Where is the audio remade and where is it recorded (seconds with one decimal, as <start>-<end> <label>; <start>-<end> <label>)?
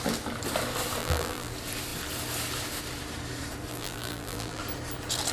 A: 0.0-1.0 recorded; 1.0-1.5 remade; 1.5-3.7 recorded; 3.7-4.6 remade; 4.6-5.3 recorded